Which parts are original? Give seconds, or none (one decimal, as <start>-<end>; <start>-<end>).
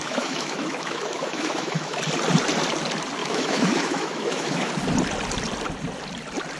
2.0-3.2; 4.7-6.6